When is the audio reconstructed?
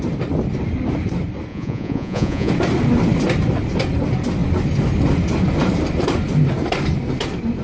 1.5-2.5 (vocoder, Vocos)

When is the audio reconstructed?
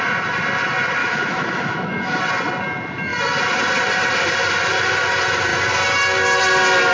1.0-2.2 (autoencoder, DAC-VAE)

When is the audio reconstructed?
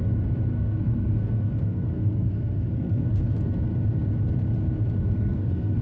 0.5-3.2 (codec, SNAC); 5.0-5.8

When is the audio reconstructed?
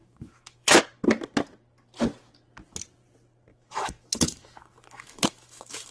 0.0-0.8 (autoencoder, DAC-VAE); 3.5-5.9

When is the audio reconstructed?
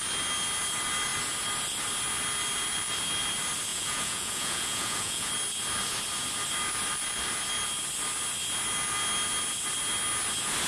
3.7-5.3 (vocoder, Vocos)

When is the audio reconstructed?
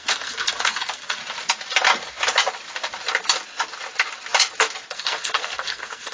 0.0-1.2 (codec, SNAC); 4.9-6.1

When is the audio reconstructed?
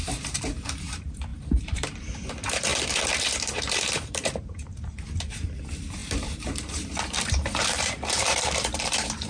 0.0-9.3 (vocoder, BigVGAN v2)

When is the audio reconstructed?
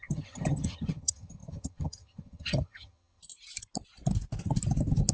0.0-3.2 (vocoder, HiFi-GAN)